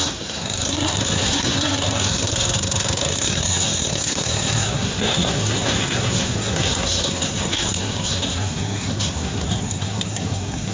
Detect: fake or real fake